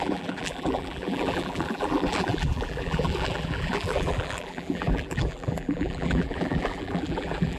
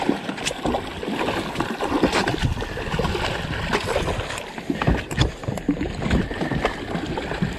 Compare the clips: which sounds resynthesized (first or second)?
first